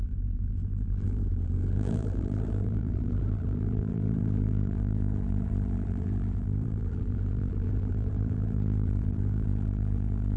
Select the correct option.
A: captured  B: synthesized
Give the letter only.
B